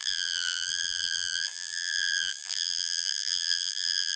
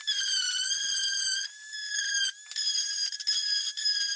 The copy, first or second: first